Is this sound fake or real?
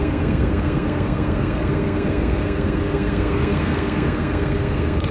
fake